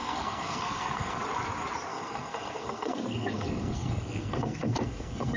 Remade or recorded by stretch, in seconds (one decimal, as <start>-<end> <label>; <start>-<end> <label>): 0.0-1.2 remade; 1.2-1.9 recorded; 1.9-5.4 remade